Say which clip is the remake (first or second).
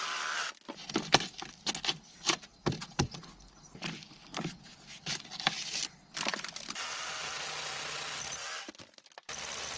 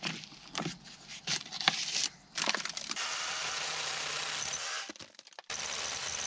second